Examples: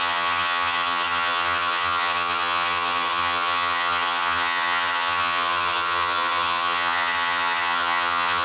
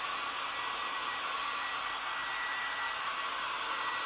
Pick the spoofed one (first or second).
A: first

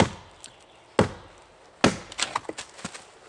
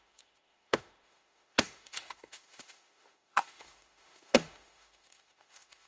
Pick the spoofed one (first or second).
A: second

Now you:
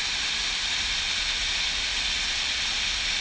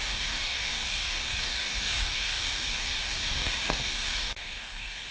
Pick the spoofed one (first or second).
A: second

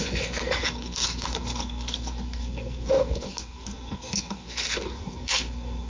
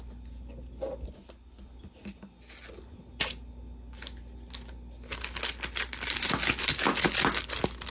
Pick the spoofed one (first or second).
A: first